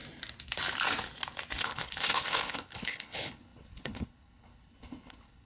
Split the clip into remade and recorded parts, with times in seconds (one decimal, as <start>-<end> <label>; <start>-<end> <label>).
0.0-1.6 recorded; 1.6-5.5 remade